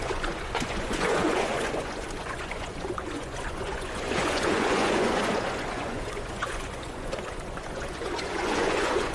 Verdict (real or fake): fake